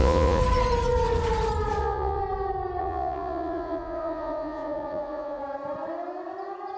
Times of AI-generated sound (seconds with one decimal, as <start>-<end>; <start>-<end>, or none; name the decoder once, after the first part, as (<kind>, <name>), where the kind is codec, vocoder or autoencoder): 0.0-0.4 (vocoder, Vocos); 1.8-2.2; 2.8-5.4